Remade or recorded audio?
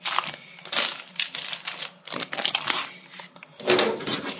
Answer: recorded